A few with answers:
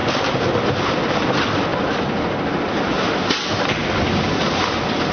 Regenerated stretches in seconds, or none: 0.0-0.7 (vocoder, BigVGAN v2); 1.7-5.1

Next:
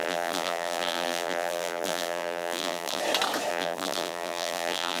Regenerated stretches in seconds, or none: 0.0-3.0 (vocoder, BigVGAN v2); 3.5-5.0

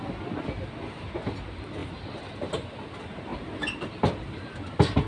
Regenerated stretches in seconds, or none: none

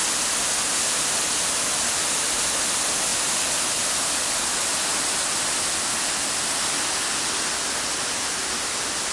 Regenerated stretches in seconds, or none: none

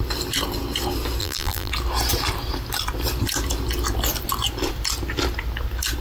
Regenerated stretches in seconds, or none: 1.2-1.7 (vocoder, BigVGAN v2)

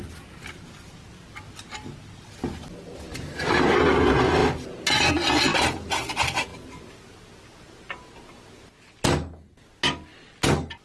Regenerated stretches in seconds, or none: 3.1-3.9 (vocoder, BigVGAN v2); 5.5-6.1